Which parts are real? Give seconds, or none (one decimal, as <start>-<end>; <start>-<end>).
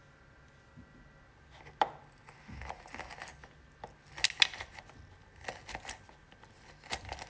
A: 0.0-7.3